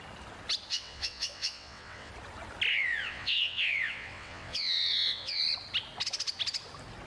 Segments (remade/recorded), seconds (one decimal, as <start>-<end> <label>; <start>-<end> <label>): 0.0-0.7 recorded; 0.7-2.1 remade; 2.1-2.7 recorded; 2.7-5.4 remade; 5.4-7.1 recorded